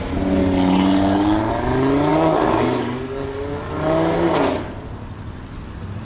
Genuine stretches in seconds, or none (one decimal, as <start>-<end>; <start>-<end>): 0.0-0.4; 1.5-2.1; 3.7-6.0